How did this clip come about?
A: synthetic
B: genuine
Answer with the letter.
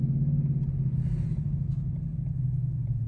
B